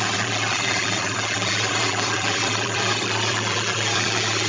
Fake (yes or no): yes